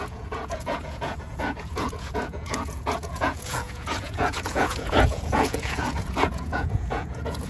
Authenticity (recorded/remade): remade